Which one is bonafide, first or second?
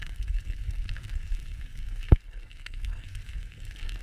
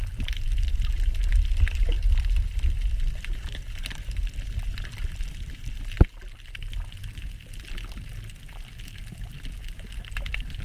second